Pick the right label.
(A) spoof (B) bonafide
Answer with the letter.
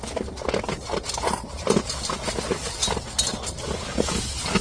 B